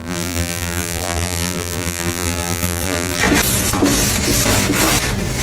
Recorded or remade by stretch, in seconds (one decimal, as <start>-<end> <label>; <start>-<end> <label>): 0.0-3.2 remade; 3.2-5.4 recorded